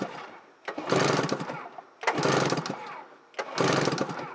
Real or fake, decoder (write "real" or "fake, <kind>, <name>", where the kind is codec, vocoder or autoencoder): real